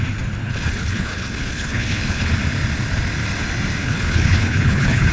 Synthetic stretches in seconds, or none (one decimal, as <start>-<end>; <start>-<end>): 0.4-2.3; 3.8-5.1